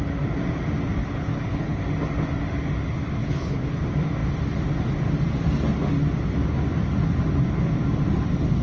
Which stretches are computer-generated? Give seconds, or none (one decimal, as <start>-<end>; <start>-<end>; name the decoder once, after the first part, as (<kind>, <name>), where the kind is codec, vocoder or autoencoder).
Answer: 1.0-1.8 (codec, HILCodec); 3.2-3.8